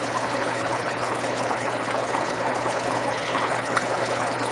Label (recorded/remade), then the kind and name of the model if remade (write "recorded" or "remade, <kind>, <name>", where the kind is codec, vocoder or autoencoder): remade, codec, HILCodec